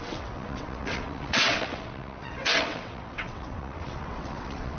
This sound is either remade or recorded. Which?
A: remade